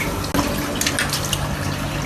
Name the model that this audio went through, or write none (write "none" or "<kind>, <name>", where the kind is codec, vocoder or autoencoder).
none